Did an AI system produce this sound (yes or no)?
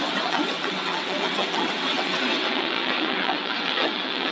yes